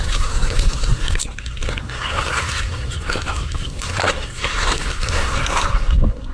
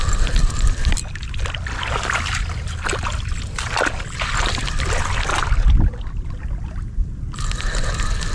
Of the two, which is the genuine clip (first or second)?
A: second